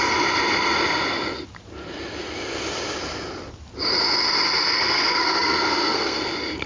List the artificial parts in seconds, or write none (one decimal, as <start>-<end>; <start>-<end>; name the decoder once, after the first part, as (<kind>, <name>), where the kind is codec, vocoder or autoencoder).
4.7-6.2 (codec, SNAC)